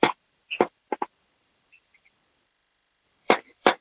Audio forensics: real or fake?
fake